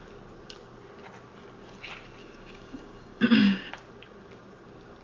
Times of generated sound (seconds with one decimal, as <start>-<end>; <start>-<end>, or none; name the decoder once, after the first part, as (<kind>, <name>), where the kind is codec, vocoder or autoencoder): 2.2-3.7 (codec, DAC)